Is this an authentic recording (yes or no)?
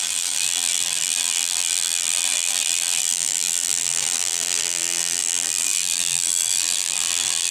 no